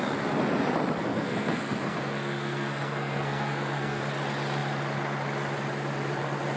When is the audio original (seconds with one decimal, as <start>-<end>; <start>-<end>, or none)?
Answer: 0.0-1.0; 4.0-6.6